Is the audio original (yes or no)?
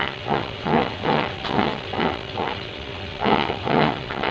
no